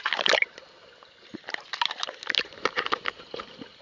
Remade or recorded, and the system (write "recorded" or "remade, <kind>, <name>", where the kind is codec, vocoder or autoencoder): recorded